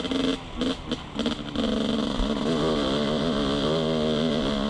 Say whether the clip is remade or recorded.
recorded